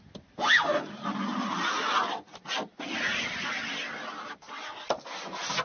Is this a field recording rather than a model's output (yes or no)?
yes